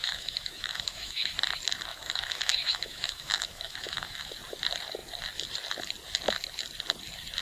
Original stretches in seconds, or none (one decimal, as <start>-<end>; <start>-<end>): 1.3-1.9; 4.3-7.4